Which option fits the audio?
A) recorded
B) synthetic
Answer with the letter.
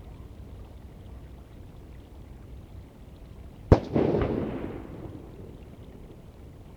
A